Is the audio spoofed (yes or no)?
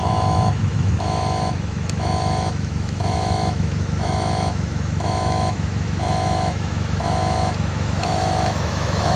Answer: yes